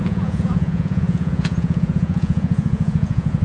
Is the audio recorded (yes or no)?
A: no